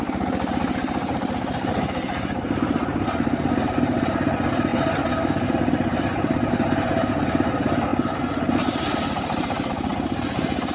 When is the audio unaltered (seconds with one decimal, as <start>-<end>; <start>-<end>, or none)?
0.0-10.7